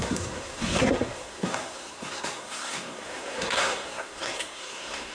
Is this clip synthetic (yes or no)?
yes